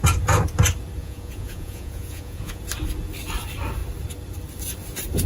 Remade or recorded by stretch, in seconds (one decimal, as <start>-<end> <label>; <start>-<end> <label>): 0.0-1.0 recorded; 1.0-2.6 remade; 2.6-5.3 recorded